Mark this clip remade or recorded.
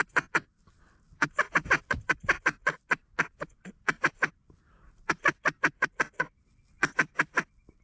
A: recorded